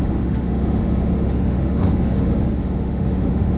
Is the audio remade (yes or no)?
yes